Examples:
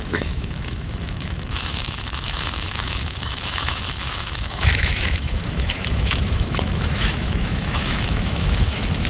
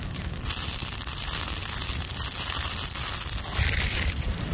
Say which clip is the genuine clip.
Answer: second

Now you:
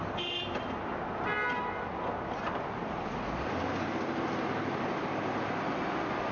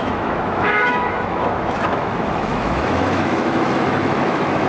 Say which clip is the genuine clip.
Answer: first